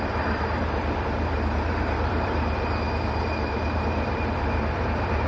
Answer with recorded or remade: remade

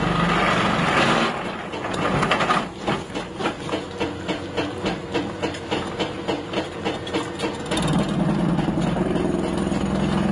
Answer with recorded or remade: recorded